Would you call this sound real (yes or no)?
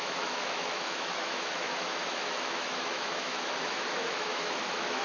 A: no